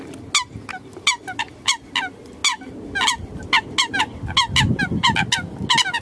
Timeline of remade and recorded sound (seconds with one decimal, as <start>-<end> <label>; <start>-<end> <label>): 0.0-6.0 recorded